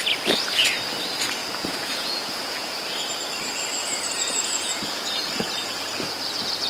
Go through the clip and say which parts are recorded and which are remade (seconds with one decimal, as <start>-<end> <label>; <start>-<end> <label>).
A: 0.0-1.4 recorded; 1.4-2.8 remade; 2.8-3.8 recorded; 3.8-5.7 remade; 5.7-6.7 recorded